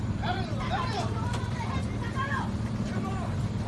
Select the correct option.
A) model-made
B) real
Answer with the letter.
A